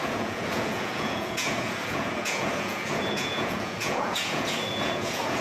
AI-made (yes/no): yes